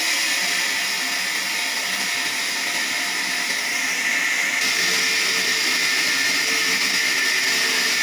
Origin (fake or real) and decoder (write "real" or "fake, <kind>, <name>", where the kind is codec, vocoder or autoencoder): real